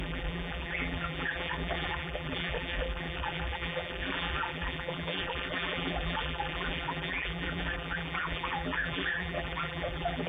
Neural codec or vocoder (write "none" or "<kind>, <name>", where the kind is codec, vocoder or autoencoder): vocoder, BigVGAN v2